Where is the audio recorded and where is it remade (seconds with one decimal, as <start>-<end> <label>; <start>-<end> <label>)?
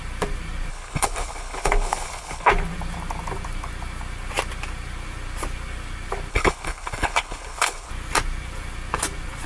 0.0-0.7 recorded; 0.7-2.5 remade; 2.5-6.3 recorded; 6.3-7.9 remade; 7.9-9.5 recorded